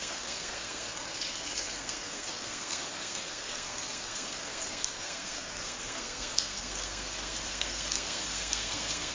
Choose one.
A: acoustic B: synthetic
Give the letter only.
B